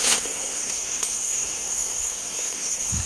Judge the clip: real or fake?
fake